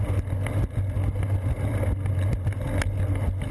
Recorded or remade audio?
recorded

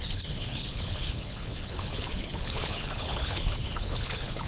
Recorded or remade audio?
remade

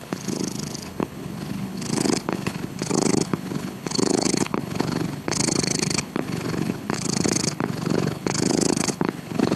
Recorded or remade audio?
remade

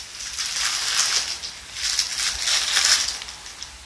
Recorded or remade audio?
recorded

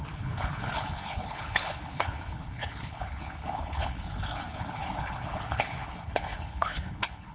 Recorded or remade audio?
remade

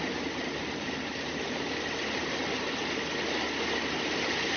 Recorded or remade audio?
recorded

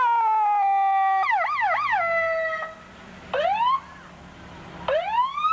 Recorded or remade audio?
recorded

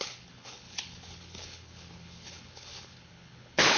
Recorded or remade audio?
remade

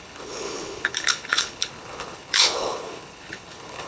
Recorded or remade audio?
remade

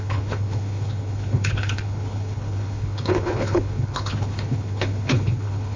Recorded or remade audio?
remade